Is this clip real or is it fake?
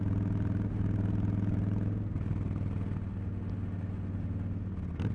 real